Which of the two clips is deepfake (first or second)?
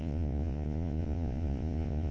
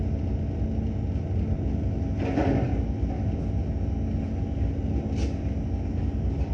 first